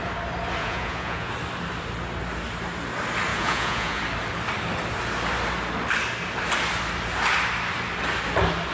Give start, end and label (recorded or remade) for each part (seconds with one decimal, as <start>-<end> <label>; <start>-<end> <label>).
0.0-0.6 recorded; 0.6-1.3 remade; 1.3-3.3 recorded; 3.3-4.0 remade; 4.0-8.7 recorded